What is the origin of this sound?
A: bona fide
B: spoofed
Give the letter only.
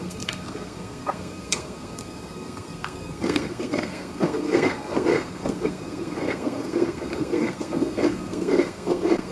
B